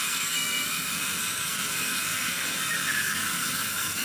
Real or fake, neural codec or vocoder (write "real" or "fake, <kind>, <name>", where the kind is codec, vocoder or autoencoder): fake, codec, SNAC